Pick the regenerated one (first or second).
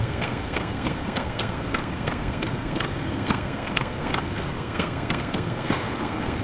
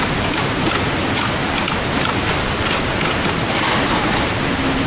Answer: first